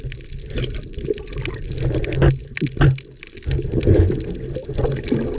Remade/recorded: recorded